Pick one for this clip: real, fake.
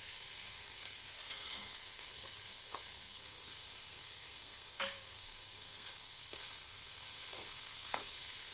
fake